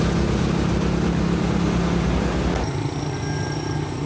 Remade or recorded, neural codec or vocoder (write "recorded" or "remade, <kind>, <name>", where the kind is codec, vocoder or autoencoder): recorded